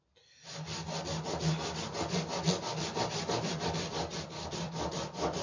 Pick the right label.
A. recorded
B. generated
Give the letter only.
A